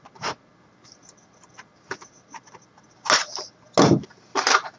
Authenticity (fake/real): real